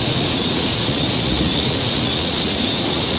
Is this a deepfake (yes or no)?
yes